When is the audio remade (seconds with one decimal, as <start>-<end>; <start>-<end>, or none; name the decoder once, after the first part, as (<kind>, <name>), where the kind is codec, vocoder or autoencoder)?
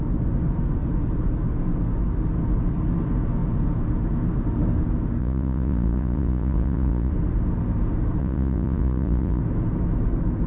5.2-7.1 (vocoder, Vocos); 8.2-9.4